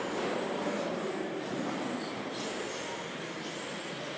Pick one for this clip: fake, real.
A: real